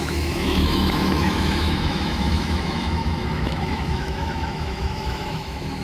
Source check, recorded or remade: remade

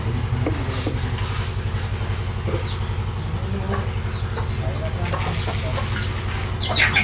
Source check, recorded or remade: recorded